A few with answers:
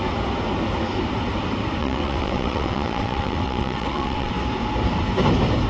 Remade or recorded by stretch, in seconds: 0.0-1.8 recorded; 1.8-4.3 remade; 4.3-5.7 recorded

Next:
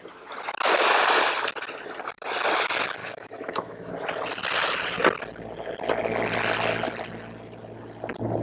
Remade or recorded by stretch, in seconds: 0.0-3.0 recorded; 3.0-3.9 remade; 3.9-8.4 recorded

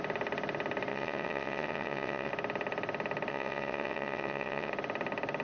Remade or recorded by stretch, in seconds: 0.0-0.9 recorded; 0.9-2.3 remade; 2.3-3.3 recorded; 3.3-4.7 remade; 4.7-5.4 recorded

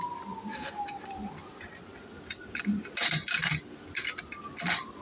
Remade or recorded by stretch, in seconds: 0.0-5.0 recorded

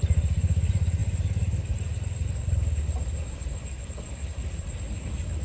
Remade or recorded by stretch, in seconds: 0.0-5.4 recorded

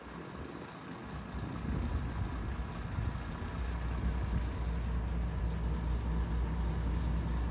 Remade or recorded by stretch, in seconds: 0.0-7.5 recorded